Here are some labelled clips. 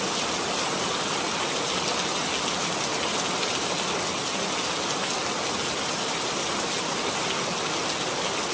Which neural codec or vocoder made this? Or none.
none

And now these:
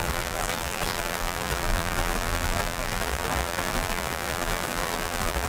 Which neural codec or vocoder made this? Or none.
vocoder, BigVGAN v2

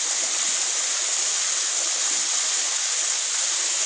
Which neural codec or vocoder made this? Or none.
none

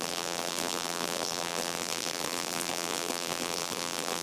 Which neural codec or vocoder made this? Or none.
vocoder, BigVGAN v2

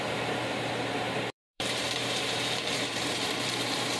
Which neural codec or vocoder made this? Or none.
vocoder, BigVGAN v2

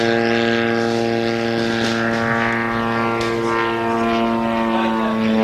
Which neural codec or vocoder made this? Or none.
none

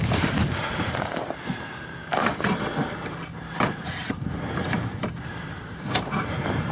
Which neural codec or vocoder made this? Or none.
vocoder, BigVGAN v2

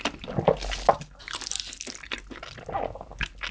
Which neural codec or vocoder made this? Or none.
none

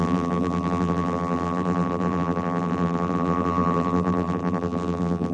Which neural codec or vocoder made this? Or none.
vocoder, BigVGAN v2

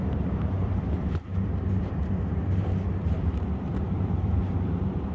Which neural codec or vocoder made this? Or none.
vocoder, BigVGAN v2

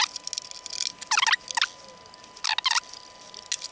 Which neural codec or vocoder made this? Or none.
none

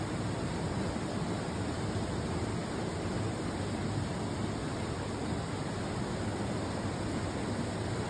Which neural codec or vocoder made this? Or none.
none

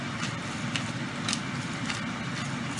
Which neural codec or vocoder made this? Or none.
none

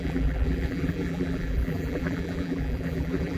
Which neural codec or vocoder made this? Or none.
vocoder, BigVGAN v2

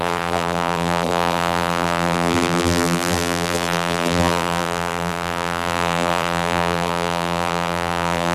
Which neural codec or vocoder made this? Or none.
vocoder, BigVGAN v2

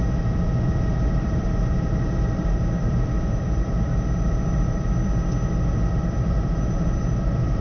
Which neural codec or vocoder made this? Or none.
vocoder, BigVGAN v2